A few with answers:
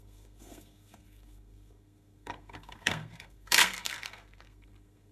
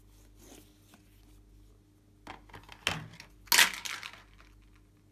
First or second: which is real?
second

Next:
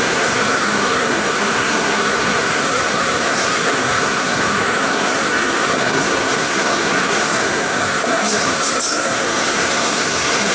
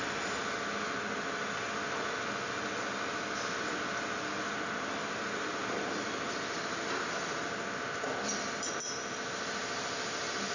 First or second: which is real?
second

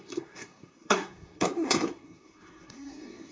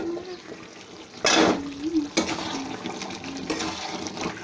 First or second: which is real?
second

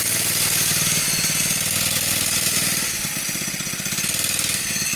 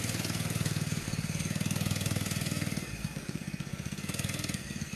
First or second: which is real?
first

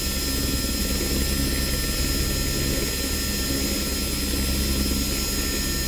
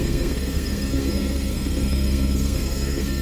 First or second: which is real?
first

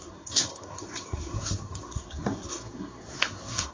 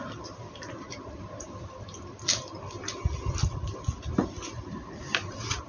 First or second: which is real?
second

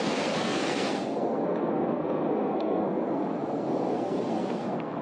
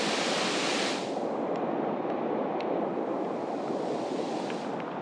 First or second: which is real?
second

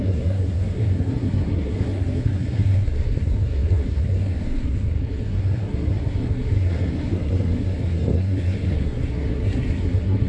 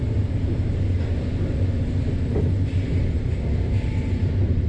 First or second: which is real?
second